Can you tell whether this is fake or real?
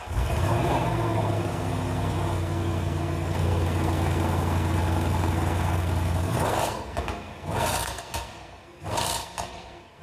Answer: fake